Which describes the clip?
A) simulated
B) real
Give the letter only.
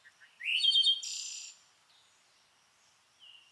B